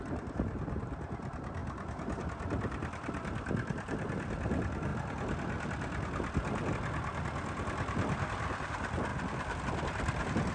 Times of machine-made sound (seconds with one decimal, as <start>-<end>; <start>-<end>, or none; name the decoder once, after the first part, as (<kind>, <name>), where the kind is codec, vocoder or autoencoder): 0.0-1.6 (vocoder, BigVGAN v2); 2.2-4.9; 6.7-10.5